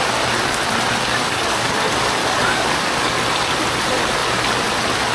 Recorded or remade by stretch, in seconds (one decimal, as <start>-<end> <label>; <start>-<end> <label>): 0.0-1.1 recorded; 1.1-1.7 remade; 1.7-2.2 recorded; 2.2-3.2 remade; 3.2-5.1 recorded